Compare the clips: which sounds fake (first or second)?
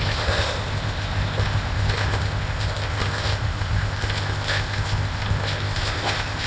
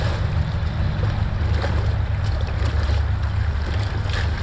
first